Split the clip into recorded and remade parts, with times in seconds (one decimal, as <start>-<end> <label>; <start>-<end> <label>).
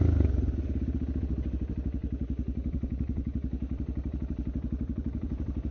0.0-2.0 recorded; 2.0-5.7 remade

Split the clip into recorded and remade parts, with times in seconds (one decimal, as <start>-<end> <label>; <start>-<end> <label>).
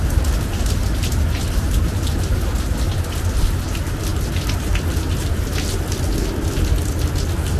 0.0-7.6 recorded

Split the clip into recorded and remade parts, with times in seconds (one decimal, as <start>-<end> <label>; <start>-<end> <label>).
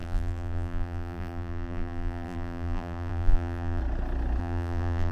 0.0-3.8 remade; 3.8-4.4 recorded; 4.4-5.1 remade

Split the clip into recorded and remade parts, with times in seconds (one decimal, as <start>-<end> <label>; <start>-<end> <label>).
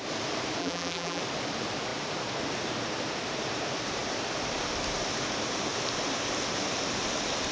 0.0-0.6 recorded; 0.6-1.2 remade; 1.2-7.5 recorded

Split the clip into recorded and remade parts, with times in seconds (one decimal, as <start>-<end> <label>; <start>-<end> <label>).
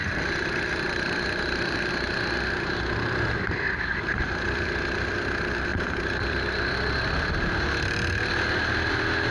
0.0-1.9 remade; 1.9-5.7 recorded; 5.7-7.3 remade; 7.3-9.3 recorded